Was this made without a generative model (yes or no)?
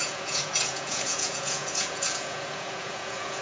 no